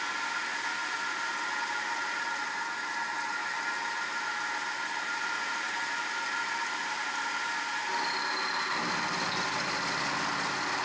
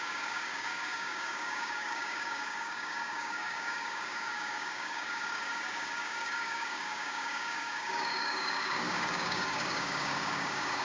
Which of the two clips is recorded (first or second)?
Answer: first